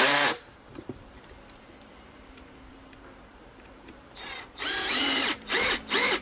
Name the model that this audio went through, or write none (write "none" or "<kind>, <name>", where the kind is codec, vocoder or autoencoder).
vocoder, BigVGAN v2